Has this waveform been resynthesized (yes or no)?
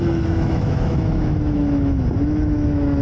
yes